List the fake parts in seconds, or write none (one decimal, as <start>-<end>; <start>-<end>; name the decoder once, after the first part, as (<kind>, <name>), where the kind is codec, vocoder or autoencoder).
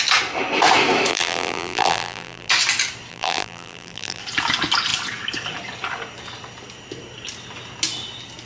1.1-2.5 (vocoder, BigVGAN v2); 3.1-4.2